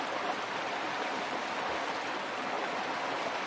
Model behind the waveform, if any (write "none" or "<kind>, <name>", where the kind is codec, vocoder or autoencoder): none